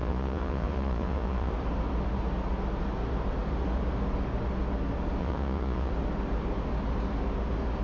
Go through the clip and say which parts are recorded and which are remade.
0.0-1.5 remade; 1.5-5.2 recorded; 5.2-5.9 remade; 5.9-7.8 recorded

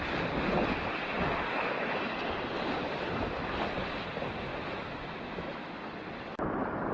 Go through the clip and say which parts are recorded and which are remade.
0.0-1.5 recorded; 1.5-2.1 remade; 2.1-4.5 recorded; 4.5-5.7 remade; 5.7-6.9 recorded